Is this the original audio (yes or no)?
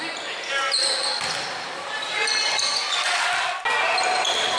yes